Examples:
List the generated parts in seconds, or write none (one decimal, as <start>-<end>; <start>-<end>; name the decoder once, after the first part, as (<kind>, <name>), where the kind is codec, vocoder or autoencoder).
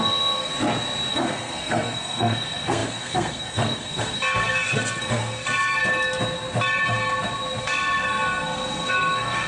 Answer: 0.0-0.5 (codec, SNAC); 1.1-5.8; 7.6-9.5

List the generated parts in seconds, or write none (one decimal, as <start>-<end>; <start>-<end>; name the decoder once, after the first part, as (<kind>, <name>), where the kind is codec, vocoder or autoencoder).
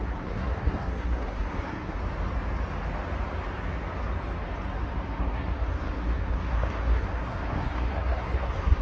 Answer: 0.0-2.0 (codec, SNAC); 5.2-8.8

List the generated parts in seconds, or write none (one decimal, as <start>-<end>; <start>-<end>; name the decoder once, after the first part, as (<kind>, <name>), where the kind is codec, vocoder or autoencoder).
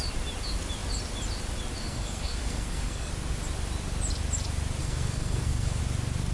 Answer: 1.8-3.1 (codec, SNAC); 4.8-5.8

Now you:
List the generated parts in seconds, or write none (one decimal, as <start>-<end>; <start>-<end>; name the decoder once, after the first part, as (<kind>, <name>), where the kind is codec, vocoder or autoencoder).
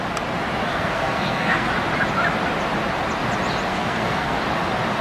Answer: 0.7-1.7 (codec, SNAC); 3.7-4.4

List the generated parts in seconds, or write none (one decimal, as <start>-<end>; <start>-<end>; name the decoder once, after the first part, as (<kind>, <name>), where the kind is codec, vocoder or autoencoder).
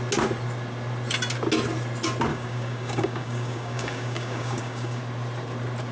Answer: 2.3-5.0 (codec, DAC)